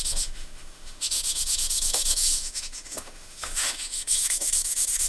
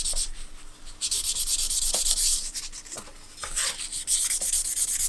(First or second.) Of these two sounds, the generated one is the first